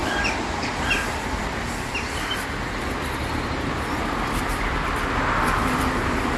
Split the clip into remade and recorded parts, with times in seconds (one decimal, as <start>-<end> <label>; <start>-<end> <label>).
0.0-1.4 remade; 1.4-6.4 recorded